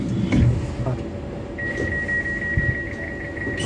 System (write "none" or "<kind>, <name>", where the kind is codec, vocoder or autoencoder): none